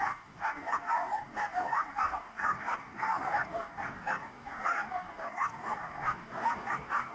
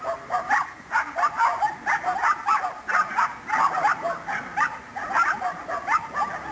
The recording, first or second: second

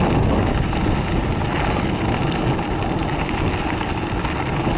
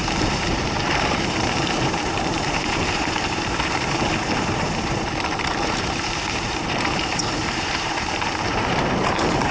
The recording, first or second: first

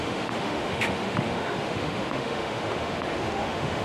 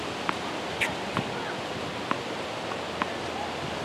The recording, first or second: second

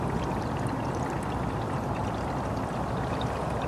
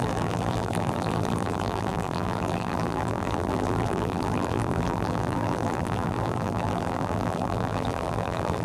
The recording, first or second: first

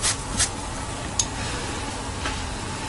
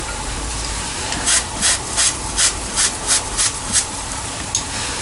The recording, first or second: first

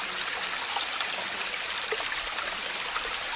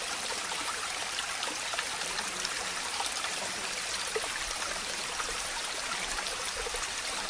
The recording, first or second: first